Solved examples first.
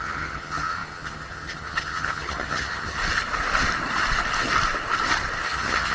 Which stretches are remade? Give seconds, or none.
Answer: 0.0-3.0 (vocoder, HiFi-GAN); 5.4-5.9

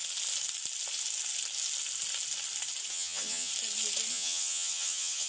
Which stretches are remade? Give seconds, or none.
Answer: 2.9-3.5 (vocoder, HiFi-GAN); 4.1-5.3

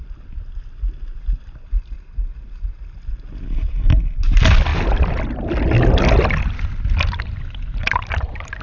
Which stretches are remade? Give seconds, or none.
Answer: none

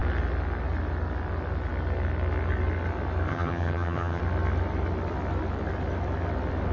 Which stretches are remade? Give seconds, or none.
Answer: 3.3-4.2 (vocoder, HiFi-GAN)